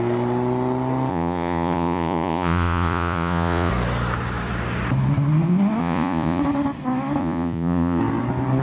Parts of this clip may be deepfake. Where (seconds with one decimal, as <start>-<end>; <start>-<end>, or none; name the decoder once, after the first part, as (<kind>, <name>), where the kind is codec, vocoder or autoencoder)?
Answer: 1.1-3.7 (vocoder, Vocos); 5.8-6.4; 7.2-8.0